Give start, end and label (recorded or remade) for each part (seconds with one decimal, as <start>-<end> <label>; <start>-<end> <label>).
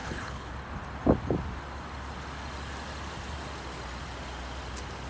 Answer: 0.0-0.5 remade; 0.5-5.1 recorded